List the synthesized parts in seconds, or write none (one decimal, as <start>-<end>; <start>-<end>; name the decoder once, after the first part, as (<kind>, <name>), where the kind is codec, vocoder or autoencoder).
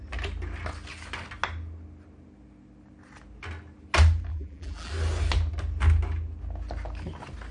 4.3-4.9 (vocoder, BigVGAN v2)